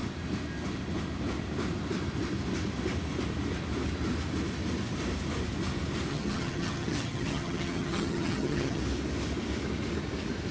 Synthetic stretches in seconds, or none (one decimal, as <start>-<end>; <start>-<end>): 6.1-8.8